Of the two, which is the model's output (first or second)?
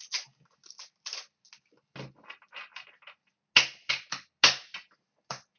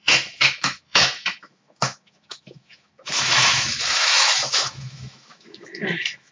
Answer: second